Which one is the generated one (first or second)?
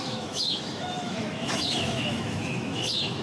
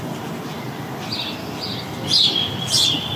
first